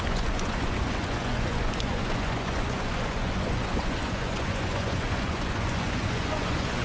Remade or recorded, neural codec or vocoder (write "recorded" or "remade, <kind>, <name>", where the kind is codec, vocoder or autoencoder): remade, vocoder, Vocos